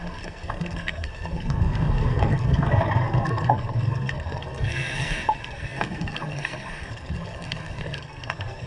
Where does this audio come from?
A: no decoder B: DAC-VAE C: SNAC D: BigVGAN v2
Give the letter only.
C